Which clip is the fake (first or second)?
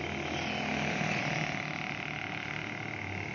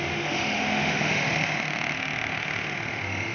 second